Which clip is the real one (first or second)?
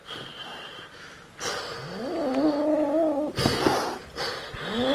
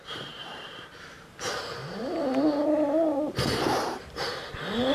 first